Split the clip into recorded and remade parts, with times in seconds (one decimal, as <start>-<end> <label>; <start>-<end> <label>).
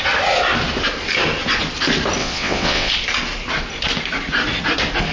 0.0-2.2 recorded; 2.2-2.9 remade; 2.9-5.1 recorded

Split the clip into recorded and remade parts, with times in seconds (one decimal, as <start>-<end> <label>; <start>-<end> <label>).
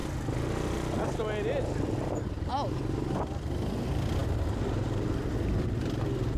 0.0-6.4 recorded